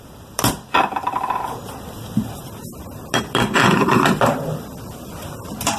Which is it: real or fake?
fake